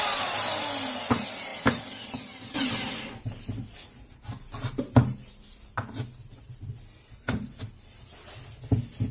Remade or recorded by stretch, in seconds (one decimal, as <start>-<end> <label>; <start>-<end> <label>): 0.0-9.1 recorded